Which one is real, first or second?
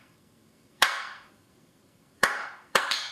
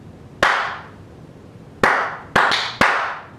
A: second